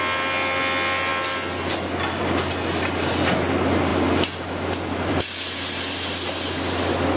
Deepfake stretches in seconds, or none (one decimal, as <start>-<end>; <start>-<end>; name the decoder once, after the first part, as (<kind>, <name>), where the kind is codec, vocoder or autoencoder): none